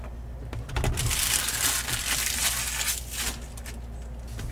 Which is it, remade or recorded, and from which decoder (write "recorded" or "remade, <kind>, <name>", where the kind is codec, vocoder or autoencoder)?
recorded